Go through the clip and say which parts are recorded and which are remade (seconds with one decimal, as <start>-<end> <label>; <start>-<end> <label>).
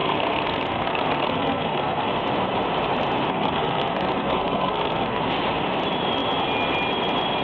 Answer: 0.0-2.1 remade; 2.1-3.3 recorded; 3.3-5.2 remade; 5.2-7.4 recorded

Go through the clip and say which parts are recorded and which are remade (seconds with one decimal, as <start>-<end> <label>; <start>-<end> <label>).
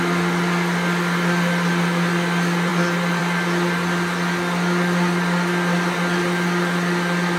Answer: 0.0-7.4 recorded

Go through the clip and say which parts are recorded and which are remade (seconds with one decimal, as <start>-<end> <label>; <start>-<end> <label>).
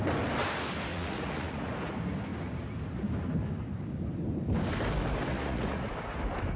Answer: 0.0-0.9 recorded; 0.9-1.7 remade; 1.7-5.3 recorded; 5.3-5.9 remade; 5.9-6.6 recorded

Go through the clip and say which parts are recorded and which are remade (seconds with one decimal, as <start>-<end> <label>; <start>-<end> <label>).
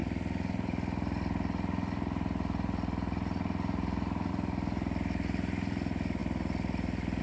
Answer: 0.0-7.2 recorded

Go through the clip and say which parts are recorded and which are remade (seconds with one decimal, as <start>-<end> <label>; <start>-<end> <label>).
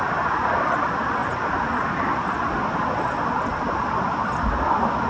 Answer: 0.0-5.1 recorded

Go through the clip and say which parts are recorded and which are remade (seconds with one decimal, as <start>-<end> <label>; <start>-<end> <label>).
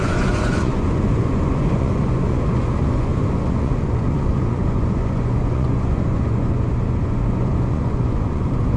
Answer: 0.0-8.8 remade